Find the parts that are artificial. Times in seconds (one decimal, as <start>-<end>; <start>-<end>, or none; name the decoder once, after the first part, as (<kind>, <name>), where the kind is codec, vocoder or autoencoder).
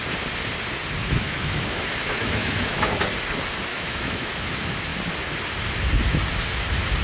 1.0-2.9 (autoencoder, DAC-VAE); 3.7-4.3